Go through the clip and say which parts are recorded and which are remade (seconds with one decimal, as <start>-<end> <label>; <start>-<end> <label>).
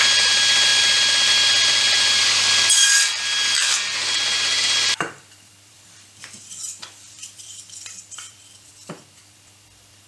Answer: 0.0-10.1 remade